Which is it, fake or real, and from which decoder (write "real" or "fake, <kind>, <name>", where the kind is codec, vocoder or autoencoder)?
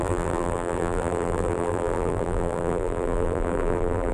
fake, vocoder, BigVGAN v2